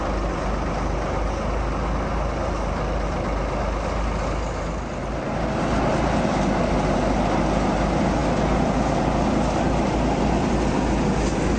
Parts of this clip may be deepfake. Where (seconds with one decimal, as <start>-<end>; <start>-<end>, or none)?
none